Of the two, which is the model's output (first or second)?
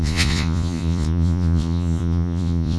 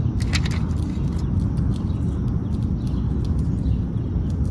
first